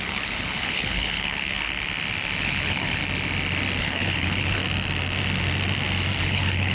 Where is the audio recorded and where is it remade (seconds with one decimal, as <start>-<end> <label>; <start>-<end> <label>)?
0.0-1.7 remade; 1.7-2.4 recorded; 2.4-3.0 remade; 3.0-3.8 recorded; 3.8-4.6 remade; 4.6-6.2 recorded; 6.2-6.7 remade